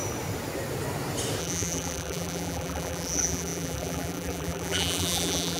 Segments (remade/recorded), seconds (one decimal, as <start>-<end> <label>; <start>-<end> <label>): 0.0-1.4 recorded; 1.4-5.6 remade